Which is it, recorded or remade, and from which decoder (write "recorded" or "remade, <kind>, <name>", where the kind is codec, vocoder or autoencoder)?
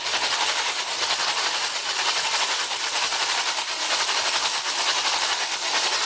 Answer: recorded